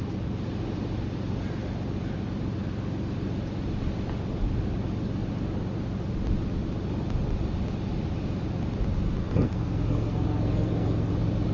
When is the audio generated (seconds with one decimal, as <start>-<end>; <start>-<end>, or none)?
9.2-11.1